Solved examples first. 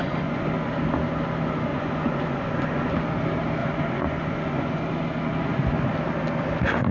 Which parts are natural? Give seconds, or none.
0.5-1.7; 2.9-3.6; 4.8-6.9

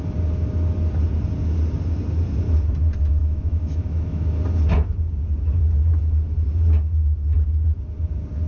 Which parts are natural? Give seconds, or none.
0.0-3.2; 4.4-8.5

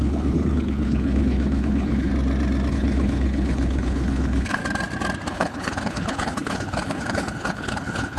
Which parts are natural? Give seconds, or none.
2.1-2.7; 4.6-5.3

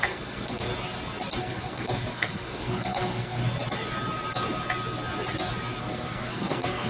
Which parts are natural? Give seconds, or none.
0.7-1.4; 3.4-5.8